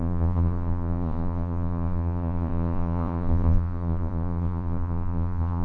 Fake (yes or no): yes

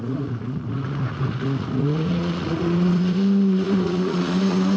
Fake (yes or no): yes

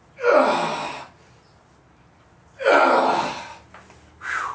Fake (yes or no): no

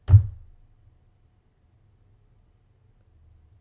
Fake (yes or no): no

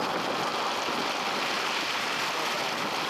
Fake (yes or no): no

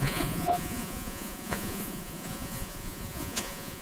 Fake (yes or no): yes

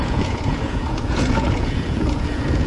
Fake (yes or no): yes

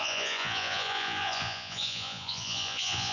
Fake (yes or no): yes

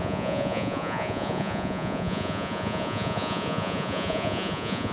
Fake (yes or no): yes